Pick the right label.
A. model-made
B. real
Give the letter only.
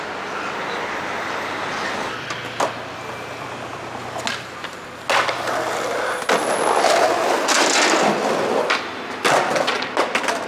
B